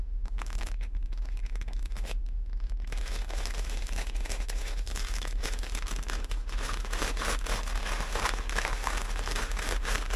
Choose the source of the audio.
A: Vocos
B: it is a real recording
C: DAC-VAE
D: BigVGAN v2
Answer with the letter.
C